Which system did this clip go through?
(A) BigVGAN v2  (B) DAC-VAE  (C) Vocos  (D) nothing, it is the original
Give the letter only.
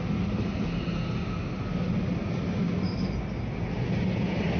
D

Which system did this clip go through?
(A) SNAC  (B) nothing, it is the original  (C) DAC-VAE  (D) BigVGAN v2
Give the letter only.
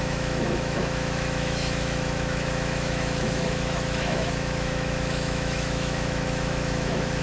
C